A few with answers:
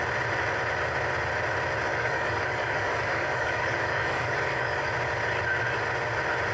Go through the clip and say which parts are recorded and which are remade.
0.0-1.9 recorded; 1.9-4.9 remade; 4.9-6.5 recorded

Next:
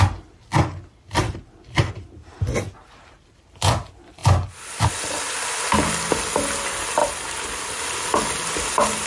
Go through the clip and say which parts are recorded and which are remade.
0.0-9.1 recorded

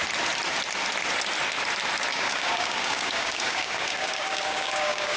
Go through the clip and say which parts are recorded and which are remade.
0.0-2.1 recorded; 2.1-5.2 remade

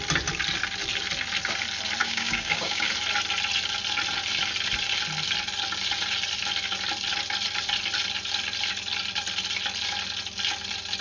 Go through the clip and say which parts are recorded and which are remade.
0.0-2.0 recorded; 2.0-2.9 remade; 2.9-11.0 recorded

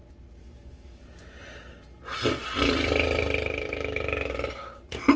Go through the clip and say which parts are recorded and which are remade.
0.0-0.4 recorded; 0.4-1.0 remade; 1.0-5.2 recorded

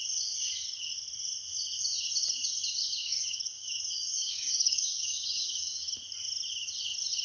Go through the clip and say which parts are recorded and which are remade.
0.0-3.0 recorded; 3.0-5.9 remade; 5.9-7.2 recorded